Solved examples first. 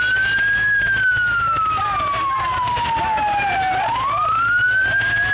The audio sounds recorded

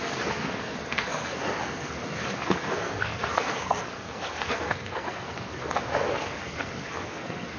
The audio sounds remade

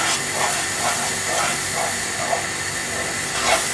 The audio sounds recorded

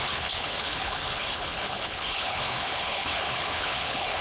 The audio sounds remade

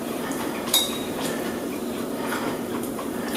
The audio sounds remade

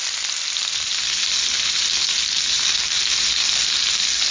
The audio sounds remade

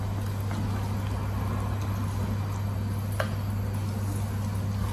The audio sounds recorded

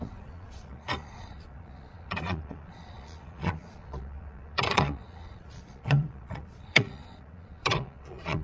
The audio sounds remade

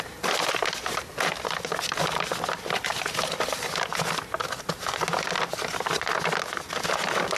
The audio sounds recorded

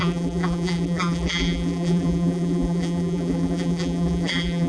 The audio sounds remade